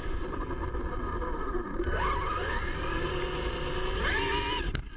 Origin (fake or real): real